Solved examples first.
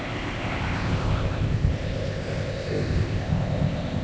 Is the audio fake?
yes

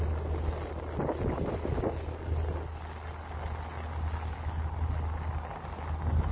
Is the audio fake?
no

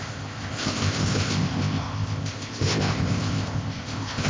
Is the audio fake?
yes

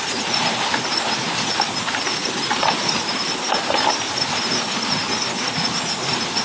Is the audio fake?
no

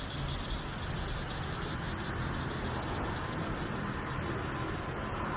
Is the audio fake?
no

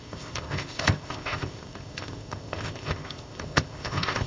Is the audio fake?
yes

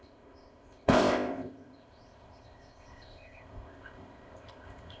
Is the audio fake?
yes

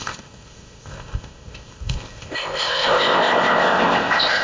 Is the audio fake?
yes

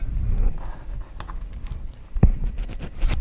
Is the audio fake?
no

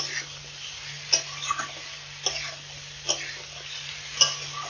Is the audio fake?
no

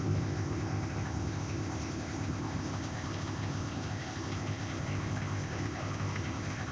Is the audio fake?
yes